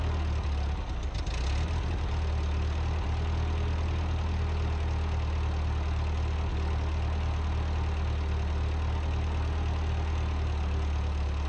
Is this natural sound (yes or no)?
yes